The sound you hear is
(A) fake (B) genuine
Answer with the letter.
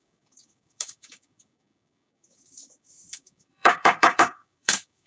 A